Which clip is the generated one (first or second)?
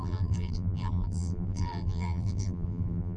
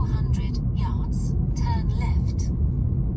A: first